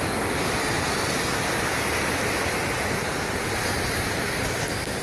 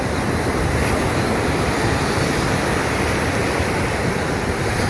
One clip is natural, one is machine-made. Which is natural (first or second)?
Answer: first